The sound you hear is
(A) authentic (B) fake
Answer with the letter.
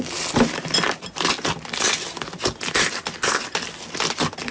A